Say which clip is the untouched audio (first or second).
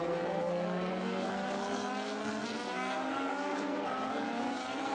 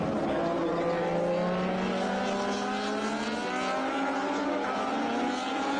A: second